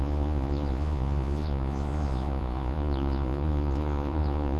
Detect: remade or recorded remade